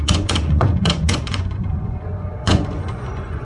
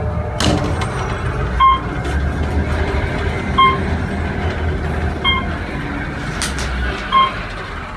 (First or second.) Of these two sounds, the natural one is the second